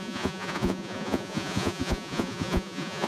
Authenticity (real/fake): fake